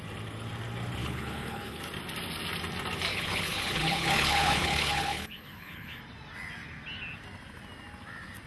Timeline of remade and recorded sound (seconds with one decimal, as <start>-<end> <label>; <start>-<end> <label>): 0.0-1.0 recorded; 1.0-1.8 remade; 1.8-3.1 recorded; 3.1-6.0 remade; 6.0-8.5 recorded